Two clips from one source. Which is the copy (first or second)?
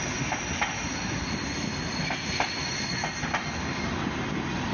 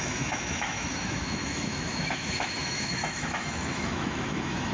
second